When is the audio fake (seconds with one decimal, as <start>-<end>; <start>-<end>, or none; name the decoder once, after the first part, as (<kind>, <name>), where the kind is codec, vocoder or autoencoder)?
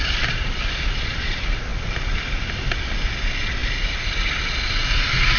none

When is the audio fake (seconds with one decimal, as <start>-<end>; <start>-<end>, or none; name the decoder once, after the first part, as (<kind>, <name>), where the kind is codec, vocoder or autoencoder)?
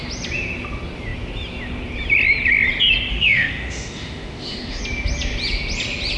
3.1-4.8 (autoencoder, DAC-VAE)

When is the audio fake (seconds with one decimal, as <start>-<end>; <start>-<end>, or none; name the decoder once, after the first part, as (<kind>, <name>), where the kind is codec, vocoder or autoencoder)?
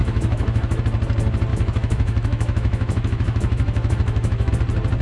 0.0-0.8 (autoencoder, DAC-VAE); 1.5-4.5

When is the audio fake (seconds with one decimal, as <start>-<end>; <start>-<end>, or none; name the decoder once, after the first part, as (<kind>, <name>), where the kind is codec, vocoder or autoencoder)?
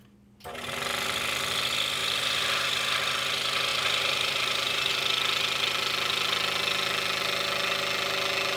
2.0-2.7 (vocoder, BigVGAN v2); 3.7-4.9